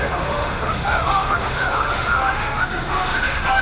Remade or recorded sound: remade